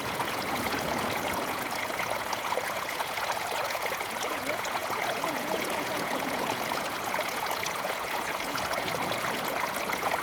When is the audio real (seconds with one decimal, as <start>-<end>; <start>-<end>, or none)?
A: none